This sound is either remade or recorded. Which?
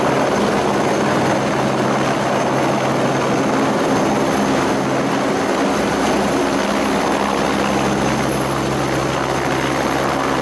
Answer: recorded